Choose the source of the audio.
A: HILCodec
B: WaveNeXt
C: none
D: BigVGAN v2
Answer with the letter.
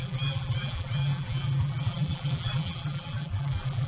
D